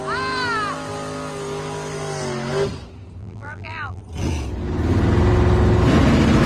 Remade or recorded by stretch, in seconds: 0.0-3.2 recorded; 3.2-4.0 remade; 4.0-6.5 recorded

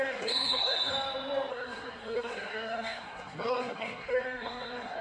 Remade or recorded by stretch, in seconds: 0.0-0.9 remade; 0.9-1.5 recorded; 1.5-5.0 remade

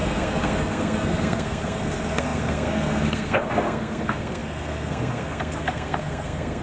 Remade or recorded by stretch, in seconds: 0.0-6.6 remade

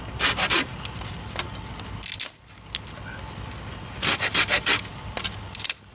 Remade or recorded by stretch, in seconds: 0.0-5.9 recorded